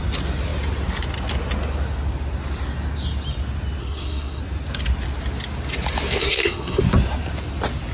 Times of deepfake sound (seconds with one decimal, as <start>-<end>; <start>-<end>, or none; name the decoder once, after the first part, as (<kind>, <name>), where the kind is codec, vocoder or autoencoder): 3.8-4.4 (codec, SNAC); 6.2-6.8